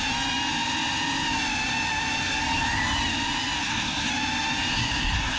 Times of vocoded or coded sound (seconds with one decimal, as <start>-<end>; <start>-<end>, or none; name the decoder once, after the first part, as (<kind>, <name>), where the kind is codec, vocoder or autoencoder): 3.6-4.1 (codec, SNAC); 4.7-5.4